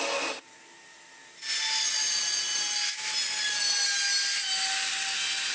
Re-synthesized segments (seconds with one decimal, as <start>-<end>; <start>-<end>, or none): none